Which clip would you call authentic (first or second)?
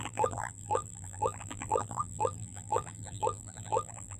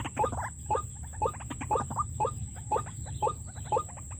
second